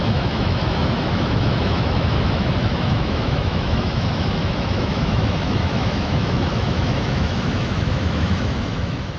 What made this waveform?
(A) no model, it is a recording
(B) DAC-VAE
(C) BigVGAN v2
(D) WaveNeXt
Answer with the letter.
B